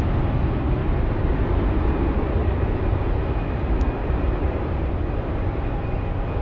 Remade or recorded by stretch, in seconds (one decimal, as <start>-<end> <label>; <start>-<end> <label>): 0.0-0.8 recorded; 0.8-1.4 remade; 1.4-2.4 recorded; 2.4-3.0 remade; 3.0-4.0 recorded; 4.0-4.9 remade; 4.9-6.4 recorded